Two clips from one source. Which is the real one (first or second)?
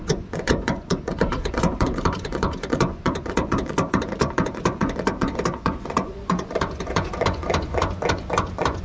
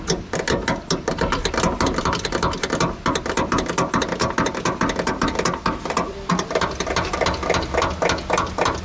second